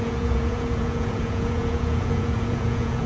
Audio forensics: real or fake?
fake